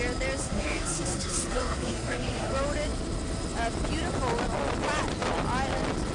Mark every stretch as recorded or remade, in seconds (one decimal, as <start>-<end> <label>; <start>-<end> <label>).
0.0-0.4 recorded; 0.4-2.5 remade; 2.5-6.1 recorded